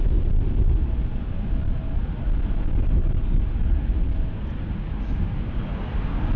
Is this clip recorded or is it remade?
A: recorded